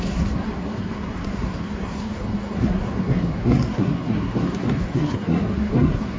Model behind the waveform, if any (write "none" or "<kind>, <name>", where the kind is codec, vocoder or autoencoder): codec, SNAC